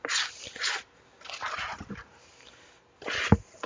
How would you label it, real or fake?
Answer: real